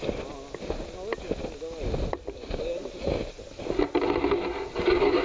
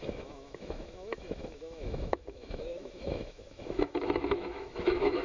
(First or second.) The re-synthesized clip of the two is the second